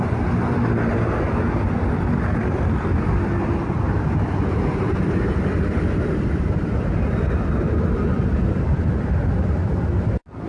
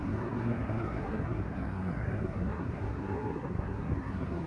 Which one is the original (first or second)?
first